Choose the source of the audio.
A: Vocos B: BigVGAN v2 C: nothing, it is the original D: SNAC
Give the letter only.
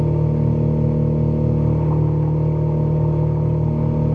C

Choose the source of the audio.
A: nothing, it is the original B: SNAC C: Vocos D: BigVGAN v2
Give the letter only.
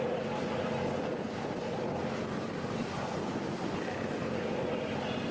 A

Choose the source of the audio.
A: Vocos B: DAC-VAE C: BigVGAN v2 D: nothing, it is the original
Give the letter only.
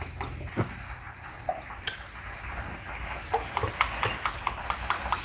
D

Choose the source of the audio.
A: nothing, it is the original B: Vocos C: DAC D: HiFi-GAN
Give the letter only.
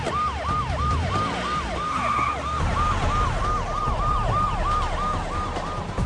A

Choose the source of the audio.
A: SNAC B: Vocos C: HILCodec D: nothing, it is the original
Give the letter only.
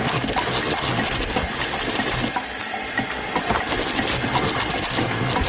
D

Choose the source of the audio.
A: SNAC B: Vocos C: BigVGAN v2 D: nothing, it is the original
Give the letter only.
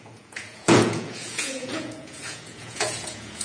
B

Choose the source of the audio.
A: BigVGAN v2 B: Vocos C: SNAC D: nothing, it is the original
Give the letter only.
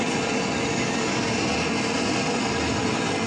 D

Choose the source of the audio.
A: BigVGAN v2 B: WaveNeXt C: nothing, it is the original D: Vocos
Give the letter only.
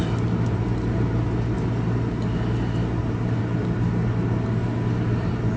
C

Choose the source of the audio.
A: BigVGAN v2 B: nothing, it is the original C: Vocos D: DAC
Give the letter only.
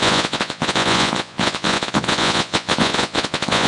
C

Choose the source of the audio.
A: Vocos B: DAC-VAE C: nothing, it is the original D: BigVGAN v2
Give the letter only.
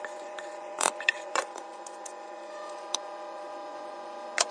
A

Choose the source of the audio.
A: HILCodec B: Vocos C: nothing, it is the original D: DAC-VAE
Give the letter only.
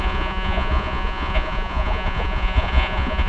B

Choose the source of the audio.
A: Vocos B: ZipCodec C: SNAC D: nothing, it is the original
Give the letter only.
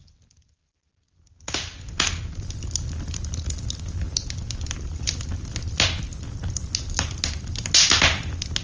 D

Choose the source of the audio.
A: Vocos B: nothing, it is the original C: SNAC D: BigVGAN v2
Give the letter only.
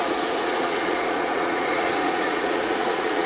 A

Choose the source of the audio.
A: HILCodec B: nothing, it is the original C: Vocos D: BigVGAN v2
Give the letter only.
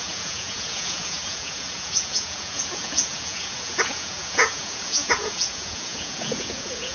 C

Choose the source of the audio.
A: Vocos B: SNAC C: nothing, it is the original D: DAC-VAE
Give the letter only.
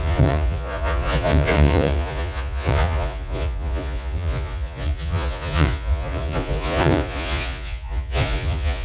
A